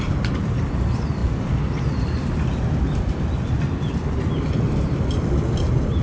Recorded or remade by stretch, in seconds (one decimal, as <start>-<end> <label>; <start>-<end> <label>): 0.0-6.0 recorded